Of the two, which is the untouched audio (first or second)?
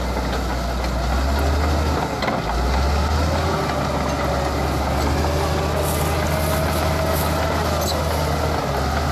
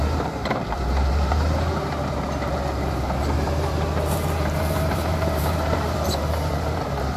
first